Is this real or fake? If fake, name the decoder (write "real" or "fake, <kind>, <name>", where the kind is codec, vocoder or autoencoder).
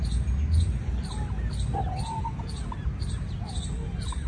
real